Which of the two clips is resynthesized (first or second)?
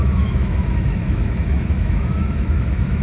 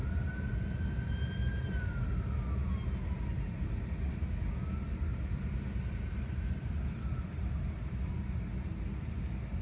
first